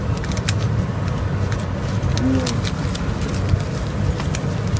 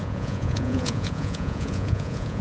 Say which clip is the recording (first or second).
first